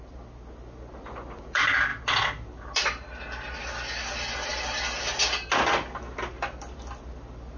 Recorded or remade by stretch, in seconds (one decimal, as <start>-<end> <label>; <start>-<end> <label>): 0.0-7.6 recorded